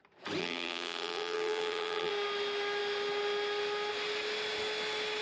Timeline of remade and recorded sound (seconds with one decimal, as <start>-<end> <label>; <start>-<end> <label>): 0.0-0.4 recorded; 0.4-2.1 remade; 2.1-5.2 recorded